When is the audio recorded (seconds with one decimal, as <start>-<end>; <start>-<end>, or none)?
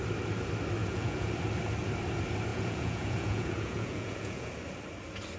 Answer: 0.0-0.8; 1.3-2.5; 4.5-5.4